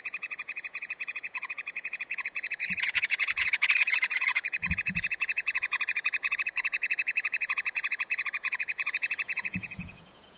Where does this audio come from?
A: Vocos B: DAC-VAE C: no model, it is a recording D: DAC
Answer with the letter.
A